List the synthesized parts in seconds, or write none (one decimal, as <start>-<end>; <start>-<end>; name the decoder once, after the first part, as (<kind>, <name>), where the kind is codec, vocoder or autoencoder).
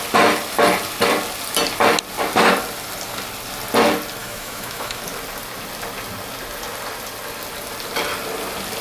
4.2-5.0 (autoencoder, DAC-VAE)